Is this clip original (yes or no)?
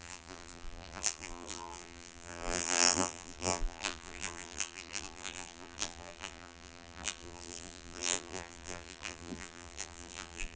no